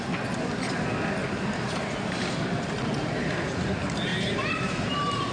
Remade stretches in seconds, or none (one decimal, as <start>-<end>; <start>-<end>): 1.2-3.2; 4.1-5.3